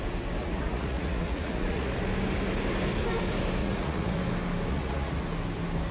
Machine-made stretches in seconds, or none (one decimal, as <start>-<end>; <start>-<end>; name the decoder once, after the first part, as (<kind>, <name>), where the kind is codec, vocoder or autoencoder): 0.4-1.9 (vocoder, Vocos); 3.6-4.2; 4.7-5.2